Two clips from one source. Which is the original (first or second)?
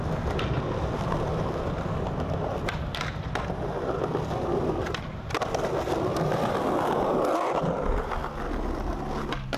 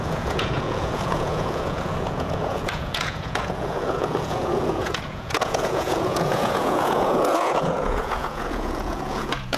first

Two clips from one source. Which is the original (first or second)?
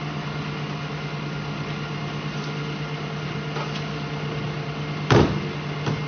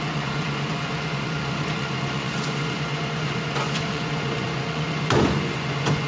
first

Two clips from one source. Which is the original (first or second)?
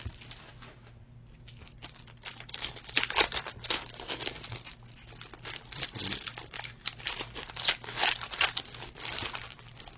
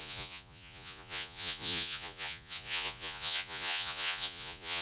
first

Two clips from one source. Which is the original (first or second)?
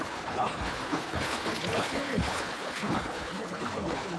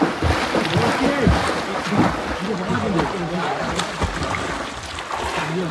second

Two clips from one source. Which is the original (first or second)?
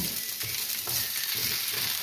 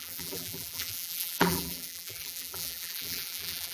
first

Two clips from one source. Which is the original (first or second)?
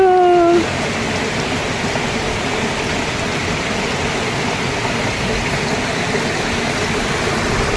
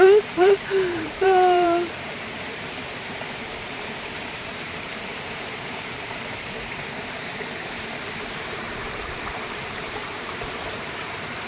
first